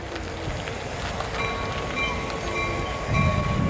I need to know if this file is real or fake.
real